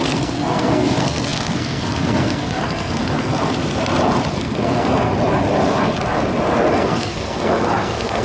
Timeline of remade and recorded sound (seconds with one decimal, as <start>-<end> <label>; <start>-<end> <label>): 0.0-3.3 remade; 3.3-4.3 recorded; 4.3-5.1 remade; 5.1-6.7 recorded; 6.7-8.2 remade